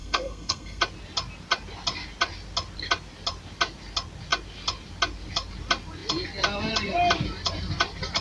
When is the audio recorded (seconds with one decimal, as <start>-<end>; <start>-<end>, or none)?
0.8-8.2